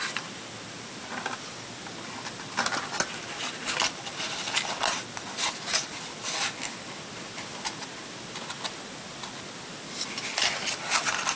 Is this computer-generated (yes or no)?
no